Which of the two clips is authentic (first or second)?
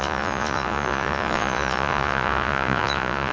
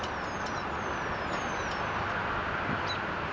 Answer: second